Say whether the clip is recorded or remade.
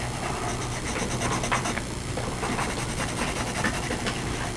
recorded